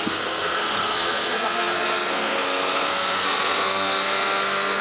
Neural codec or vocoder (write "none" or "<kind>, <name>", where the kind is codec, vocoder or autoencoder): codec, SNAC